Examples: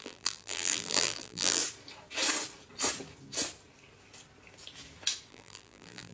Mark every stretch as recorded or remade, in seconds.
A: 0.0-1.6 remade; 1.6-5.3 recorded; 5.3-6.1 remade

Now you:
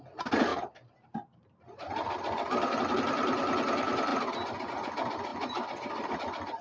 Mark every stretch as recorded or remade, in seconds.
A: 0.0-0.5 recorded; 0.5-2.8 remade; 2.8-5.3 recorded; 5.3-6.1 remade; 6.1-6.6 recorded

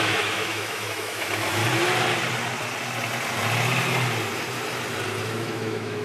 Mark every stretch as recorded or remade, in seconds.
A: 0.0-1.6 remade; 1.6-5.2 recorded; 5.2-6.0 remade